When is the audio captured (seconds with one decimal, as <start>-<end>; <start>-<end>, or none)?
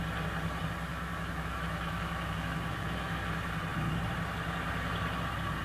0.0-0.9; 3.2-5.6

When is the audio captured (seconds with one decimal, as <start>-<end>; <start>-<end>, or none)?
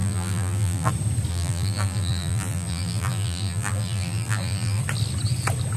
0.9-1.3; 4.8-5.8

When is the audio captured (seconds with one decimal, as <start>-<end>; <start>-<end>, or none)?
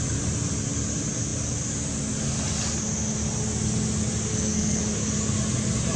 0.0-4.3; 4.8-6.0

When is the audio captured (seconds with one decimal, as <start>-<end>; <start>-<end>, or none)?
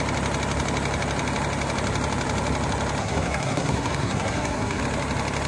0.0-3.0; 4.8-5.5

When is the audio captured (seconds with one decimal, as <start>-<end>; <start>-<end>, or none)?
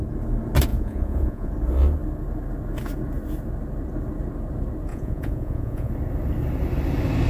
0.0-0.7; 1.5-4.9; 5.9-7.3